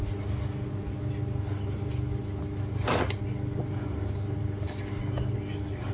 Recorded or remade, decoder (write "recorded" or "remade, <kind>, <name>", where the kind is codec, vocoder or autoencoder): recorded